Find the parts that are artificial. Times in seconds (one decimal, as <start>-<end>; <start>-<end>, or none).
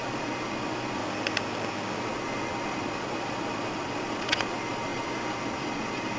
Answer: 0.0-1.0; 2.0-6.2